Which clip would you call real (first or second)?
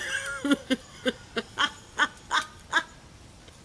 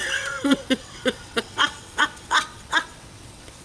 first